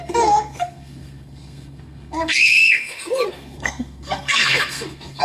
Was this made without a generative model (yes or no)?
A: no